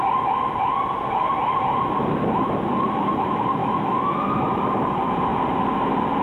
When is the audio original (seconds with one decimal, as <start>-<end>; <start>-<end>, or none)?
0.0-3.6; 4.6-6.2